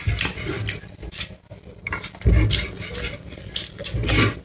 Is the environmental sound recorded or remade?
recorded